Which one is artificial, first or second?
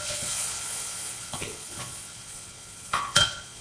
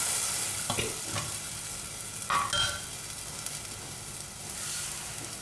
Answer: first